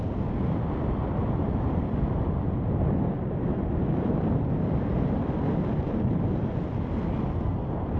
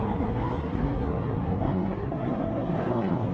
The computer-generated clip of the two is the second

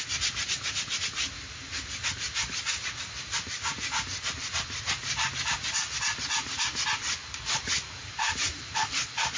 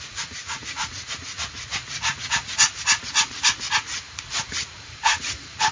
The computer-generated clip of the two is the second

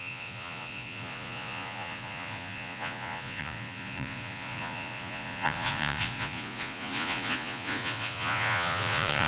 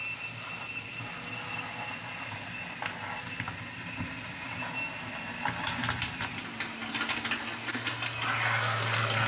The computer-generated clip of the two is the first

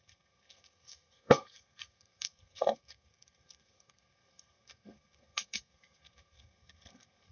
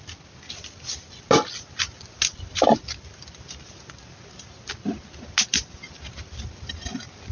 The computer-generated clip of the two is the first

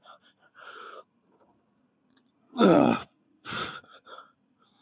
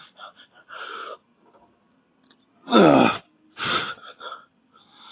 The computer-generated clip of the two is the first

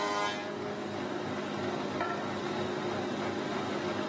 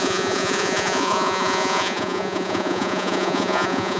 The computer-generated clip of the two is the second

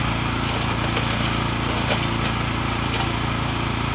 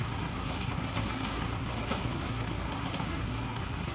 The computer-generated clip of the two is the second